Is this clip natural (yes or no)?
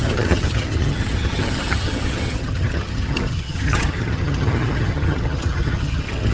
no